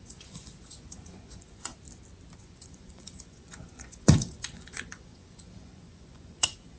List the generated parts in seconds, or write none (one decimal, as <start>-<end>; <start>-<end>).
0.0-1.7; 2.4-6.8